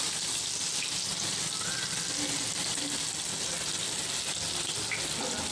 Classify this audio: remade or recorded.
recorded